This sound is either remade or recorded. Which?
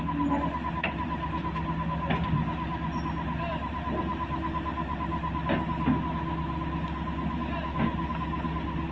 recorded